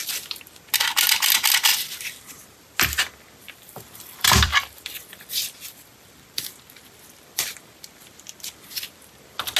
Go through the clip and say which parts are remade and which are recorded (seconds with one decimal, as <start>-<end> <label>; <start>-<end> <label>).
0.0-1.7 recorded; 1.7-6.4 remade; 6.4-9.6 recorded